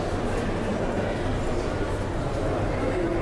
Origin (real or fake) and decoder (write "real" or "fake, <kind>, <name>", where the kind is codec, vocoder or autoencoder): real